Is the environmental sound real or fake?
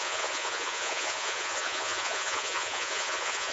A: fake